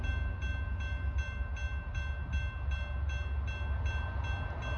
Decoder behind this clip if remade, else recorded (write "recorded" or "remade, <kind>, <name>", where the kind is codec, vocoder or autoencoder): recorded